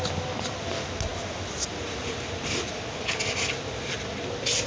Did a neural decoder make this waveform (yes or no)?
no